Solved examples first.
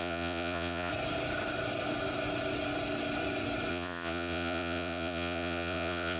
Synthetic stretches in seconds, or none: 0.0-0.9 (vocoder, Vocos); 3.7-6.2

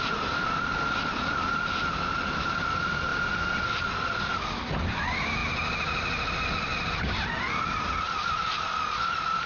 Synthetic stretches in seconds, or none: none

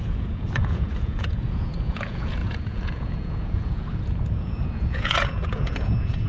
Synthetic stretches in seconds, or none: 0.0-6.3 (vocoder, Vocos)

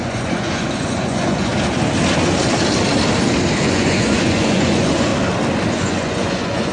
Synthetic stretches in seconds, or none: 0.0-1.5 (vocoder, Vocos); 3.6-5.1; 5.7-6.7

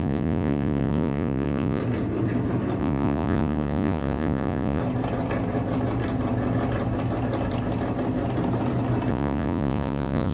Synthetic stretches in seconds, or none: 0.0-1.8 (vocoder, Vocos); 2.8-4.8; 9.1-10.3

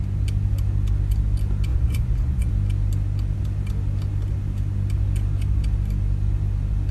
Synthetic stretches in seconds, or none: 1.7-2.5 (vocoder, Vocos)